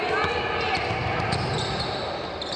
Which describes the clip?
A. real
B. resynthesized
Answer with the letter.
A